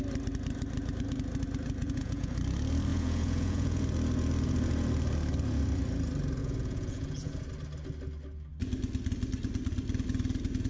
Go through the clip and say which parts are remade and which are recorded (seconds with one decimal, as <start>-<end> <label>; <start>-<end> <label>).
0.0-1.8 recorded; 1.8-2.3 remade; 2.3-2.9 recorded; 2.9-3.8 remade; 3.8-6.4 recorded; 6.4-7.4 remade; 7.4-10.7 recorded